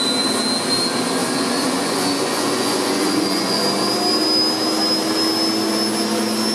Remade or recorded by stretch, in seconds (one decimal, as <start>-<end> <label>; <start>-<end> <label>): 0.0-1.2 recorded; 1.2-3.6 remade; 3.6-6.5 recorded